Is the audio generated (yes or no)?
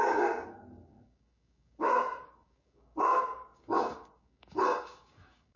yes